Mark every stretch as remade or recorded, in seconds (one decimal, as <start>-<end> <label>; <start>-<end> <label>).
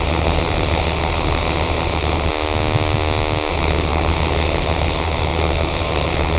0.0-2.3 remade; 2.3-3.5 recorded; 3.5-6.4 remade